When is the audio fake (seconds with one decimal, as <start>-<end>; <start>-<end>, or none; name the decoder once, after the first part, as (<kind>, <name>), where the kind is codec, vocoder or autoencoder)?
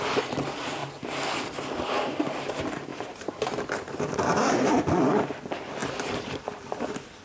2.9-4.7 (vocoder, BigVGAN v2); 5.8-6.6